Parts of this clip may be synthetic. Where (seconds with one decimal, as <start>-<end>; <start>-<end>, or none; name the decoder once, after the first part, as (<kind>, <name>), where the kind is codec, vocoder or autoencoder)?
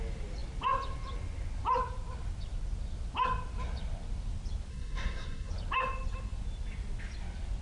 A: 4.7-5.5 (codec, SNAC)